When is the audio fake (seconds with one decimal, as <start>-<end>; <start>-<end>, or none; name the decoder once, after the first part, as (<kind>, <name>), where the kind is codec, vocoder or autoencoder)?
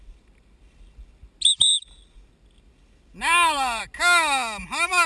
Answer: none